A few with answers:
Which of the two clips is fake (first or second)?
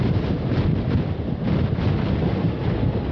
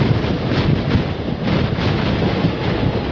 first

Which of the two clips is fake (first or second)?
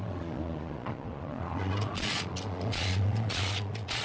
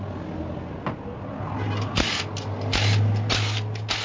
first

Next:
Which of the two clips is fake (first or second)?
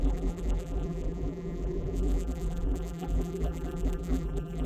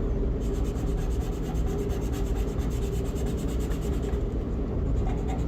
first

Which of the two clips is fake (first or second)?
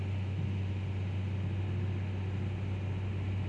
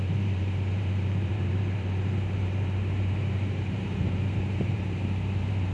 second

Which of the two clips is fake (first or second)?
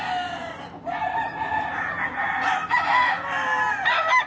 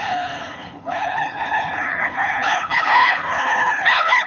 second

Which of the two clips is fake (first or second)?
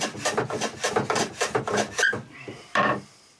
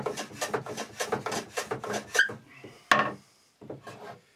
first